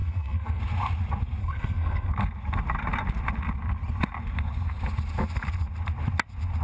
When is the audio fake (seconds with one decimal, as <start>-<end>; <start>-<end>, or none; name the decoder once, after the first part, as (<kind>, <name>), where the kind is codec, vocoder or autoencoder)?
0.0-0.6 (codec, SNAC); 1.4-2.1